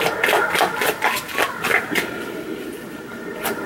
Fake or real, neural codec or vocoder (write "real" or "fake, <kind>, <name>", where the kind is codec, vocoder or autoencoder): real